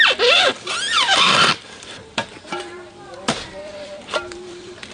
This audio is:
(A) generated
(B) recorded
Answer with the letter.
A